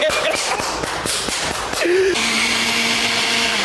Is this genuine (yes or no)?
no